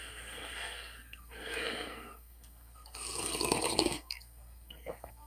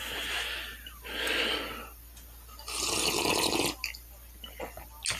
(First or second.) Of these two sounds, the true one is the second